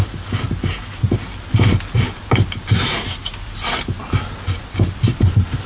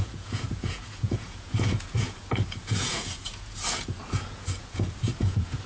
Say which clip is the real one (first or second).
first